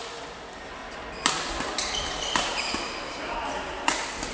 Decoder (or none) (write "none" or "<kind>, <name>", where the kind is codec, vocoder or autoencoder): none